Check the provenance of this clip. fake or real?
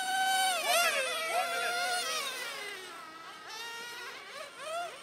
real